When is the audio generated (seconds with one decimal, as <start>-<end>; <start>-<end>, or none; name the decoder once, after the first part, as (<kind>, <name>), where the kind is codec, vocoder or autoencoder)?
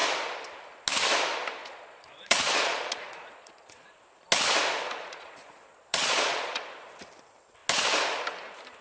1.6-4.0 (vocoder, Vocos); 5.0-6.6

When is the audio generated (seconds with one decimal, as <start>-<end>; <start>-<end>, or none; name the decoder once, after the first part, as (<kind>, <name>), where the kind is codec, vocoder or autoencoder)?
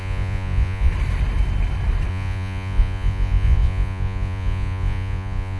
0.0-0.9 (vocoder, Vocos); 2.1-5.6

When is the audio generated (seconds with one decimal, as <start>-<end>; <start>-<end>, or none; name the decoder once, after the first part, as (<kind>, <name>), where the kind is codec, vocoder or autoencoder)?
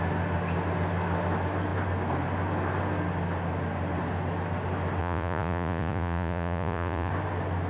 5.0-7.1 (vocoder, Vocos)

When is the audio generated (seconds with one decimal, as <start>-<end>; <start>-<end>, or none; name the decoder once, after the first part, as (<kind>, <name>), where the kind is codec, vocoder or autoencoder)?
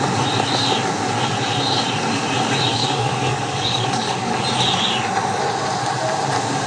2.7-4.4 (codec, DAC)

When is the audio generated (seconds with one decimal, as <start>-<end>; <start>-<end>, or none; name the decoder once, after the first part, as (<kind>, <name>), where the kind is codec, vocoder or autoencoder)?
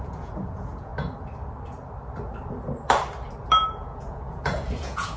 0.0-0.9 (vocoder, Vocos); 3.7-5.2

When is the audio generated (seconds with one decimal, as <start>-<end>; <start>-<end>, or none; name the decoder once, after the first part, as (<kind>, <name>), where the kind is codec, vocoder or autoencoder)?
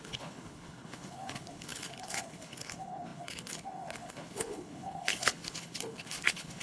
0.0-6.6 (codec, HILCodec)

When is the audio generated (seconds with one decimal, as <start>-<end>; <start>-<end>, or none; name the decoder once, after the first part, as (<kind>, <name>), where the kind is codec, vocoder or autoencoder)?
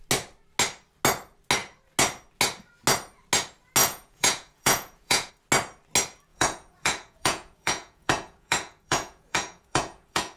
3.8-5.3 (vocoder, Vocos); 6.3-10.4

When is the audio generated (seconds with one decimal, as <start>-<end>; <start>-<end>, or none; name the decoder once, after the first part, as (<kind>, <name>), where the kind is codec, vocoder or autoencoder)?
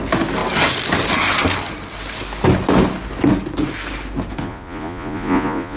4.4-5.8 (vocoder, Vocos)